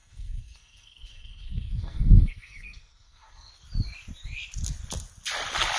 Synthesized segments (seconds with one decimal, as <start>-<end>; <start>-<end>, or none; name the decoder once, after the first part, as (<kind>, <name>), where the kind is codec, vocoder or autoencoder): 0.0-3.5 (codec, SNAC)